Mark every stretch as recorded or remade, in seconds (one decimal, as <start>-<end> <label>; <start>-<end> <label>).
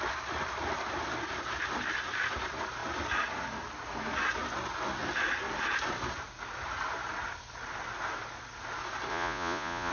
0.0-9.1 recorded; 9.1-9.9 remade